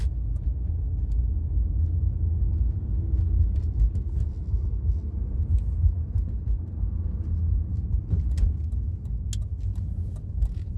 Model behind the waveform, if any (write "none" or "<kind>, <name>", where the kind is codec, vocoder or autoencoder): none